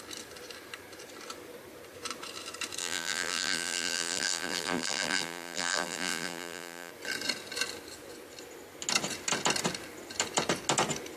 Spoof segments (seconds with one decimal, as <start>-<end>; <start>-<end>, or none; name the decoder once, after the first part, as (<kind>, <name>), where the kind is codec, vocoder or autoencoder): 2.8-6.9 (vocoder, BigVGAN v2)